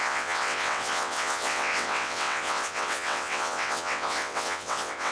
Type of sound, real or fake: fake